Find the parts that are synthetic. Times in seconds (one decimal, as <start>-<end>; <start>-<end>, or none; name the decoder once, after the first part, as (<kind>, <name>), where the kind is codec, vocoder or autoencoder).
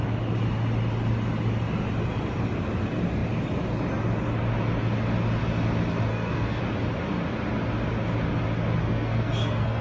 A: 6.1-6.6 (codec, SNAC); 8.8-9.8